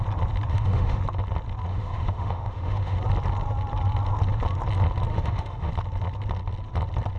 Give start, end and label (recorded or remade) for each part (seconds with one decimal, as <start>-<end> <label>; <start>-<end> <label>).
0.0-0.5 recorded; 0.5-1.0 remade; 1.0-1.7 recorded; 1.7-3.0 remade; 3.0-5.1 recorded; 5.1-5.7 remade; 5.7-7.2 recorded